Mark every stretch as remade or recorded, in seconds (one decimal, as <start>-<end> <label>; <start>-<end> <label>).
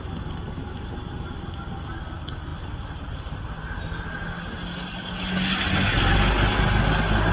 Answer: 0.0-7.3 recorded